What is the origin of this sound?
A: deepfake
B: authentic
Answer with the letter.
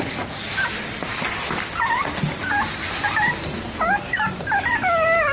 B